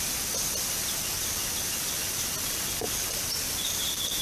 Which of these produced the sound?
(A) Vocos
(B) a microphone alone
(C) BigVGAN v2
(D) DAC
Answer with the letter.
B